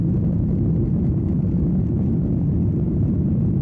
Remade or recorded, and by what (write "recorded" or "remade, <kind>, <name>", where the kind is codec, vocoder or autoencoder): recorded